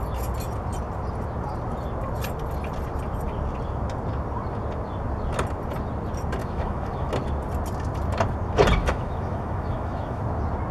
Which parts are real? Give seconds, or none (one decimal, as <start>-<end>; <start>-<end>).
0.0-6.4; 7.1-8.8; 10.2-10.7